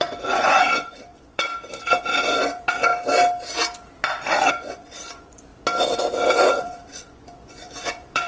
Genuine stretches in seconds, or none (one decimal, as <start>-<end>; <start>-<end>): 1.5-2.2; 2.9-4.5; 5.5-6.5